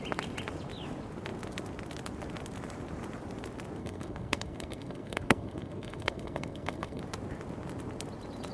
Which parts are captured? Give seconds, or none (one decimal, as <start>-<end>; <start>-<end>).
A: 0.0-3.8; 7.0-8.5